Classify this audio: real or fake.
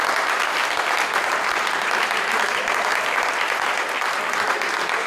real